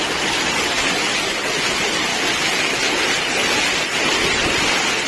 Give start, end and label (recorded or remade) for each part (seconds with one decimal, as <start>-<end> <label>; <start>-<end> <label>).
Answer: 0.0-5.1 recorded